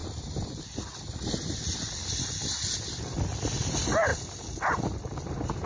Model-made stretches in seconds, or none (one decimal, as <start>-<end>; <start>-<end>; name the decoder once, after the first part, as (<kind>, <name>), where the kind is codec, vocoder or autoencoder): 0.0-4.1 (vocoder, BigVGAN v2)